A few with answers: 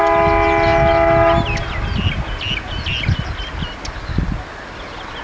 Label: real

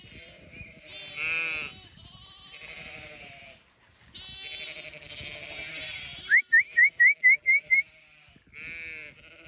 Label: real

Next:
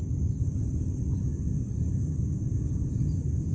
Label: real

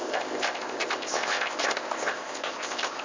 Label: fake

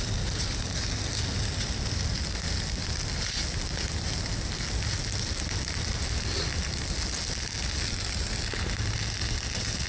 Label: real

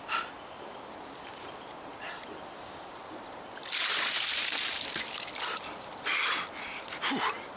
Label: real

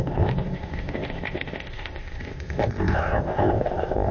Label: fake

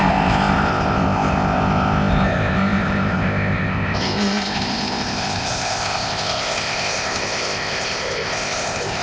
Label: fake